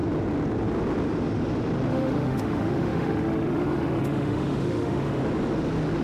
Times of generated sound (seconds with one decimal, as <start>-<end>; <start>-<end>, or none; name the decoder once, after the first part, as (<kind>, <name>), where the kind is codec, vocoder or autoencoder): 1.9-5.2 (autoencoder, DAC-VAE)